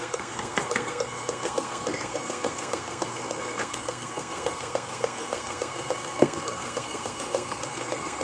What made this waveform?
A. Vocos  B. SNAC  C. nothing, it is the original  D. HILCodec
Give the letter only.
B